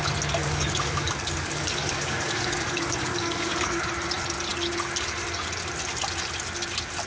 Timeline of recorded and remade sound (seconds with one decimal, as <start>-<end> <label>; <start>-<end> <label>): 0.0-0.4 recorded; 0.4-3.8 remade; 3.8-7.1 recorded